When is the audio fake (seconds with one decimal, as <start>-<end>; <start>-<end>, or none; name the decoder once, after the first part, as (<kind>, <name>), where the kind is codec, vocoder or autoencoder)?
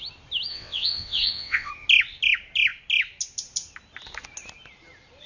0.5-1.7 (vocoder, WaveNeXt)